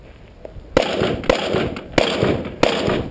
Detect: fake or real real